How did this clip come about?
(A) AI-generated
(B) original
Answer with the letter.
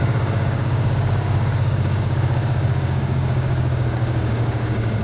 A